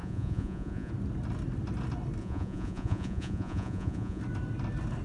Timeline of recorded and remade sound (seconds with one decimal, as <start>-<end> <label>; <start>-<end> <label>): 0.0-0.9 remade; 0.9-2.2 recorded; 2.2-4.2 remade; 4.2-5.0 recorded